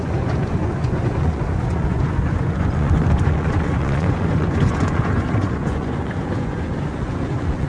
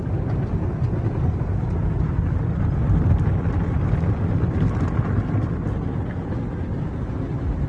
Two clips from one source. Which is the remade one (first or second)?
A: first